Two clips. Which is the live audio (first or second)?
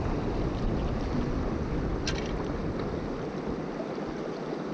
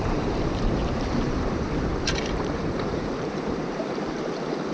first